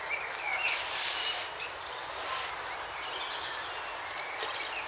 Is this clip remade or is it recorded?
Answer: recorded